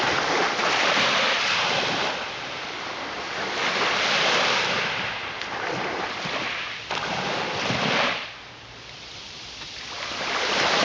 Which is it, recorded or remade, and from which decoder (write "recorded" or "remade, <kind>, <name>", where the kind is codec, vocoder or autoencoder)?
remade, vocoder, BigVGAN v2